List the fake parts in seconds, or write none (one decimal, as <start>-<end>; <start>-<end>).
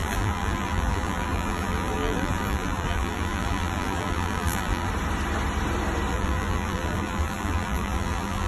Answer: 0.0-4.9; 6.1-8.5